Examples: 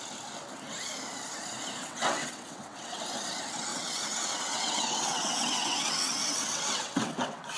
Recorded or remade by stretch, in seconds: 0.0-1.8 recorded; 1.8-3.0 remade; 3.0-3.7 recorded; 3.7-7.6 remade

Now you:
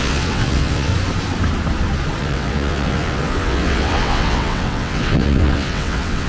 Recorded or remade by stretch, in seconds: 0.0-0.9 remade; 0.9-2.2 recorded; 2.2-6.3 remade